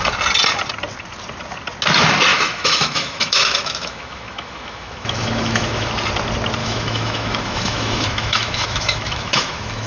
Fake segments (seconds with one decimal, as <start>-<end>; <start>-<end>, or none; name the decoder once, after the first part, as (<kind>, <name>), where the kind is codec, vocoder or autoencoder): 2.3-5.9 (autoencoder, DAC-VAE); 6.6-9.9